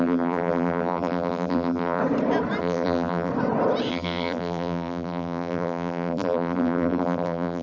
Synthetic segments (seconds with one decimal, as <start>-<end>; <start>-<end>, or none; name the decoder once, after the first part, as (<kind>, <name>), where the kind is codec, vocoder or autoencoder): 0.0-2.0 (vocoder, BigVGAN v2); 2.6-3.3; 3.9-7.6